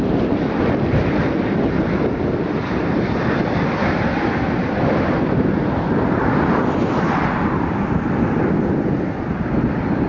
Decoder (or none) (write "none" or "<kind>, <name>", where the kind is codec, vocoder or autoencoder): vocoder, BigVGAN v2